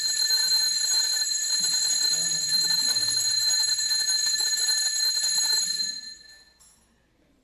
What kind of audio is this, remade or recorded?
recorded